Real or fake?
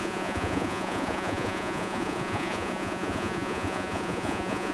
fake